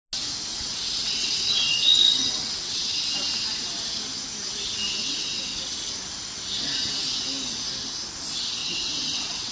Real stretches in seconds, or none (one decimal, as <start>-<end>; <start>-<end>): 0.0-0.5; 3.1-5.0; 5.6-8.6